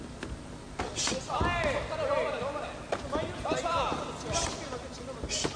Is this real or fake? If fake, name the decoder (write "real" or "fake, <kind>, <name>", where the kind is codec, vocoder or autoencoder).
real